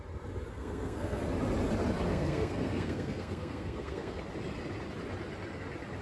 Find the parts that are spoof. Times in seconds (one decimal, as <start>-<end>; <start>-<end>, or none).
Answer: 0.5-1.2; 2.1-4.2